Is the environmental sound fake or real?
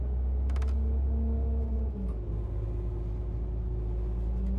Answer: real